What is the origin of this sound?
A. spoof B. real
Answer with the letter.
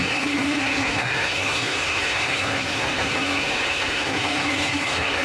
A